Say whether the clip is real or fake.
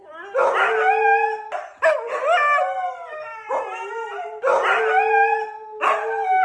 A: real